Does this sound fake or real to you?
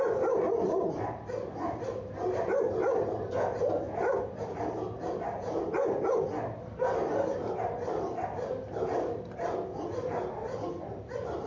real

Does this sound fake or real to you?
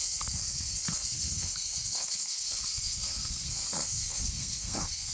fake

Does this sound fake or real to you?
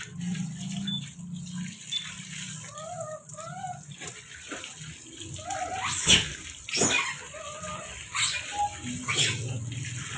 real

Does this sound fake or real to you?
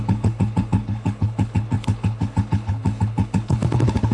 fake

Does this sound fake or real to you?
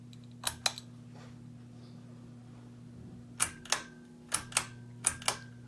real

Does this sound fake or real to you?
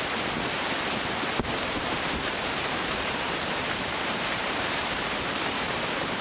fake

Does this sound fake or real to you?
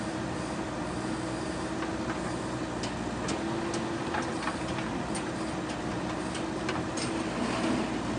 real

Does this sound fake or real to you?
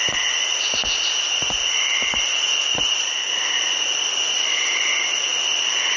real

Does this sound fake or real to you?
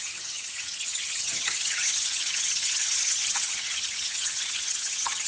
fake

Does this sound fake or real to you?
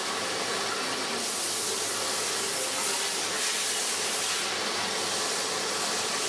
real